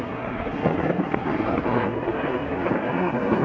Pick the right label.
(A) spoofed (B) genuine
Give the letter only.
A